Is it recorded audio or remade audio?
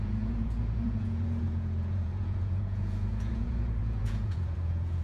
remade